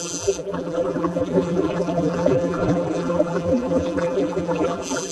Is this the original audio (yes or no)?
no